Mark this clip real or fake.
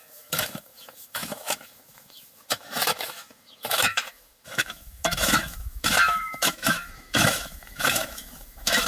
fake